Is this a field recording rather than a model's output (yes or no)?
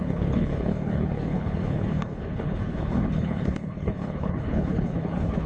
no